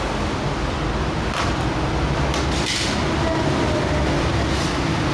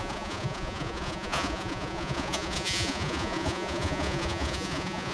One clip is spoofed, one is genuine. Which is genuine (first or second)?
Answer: first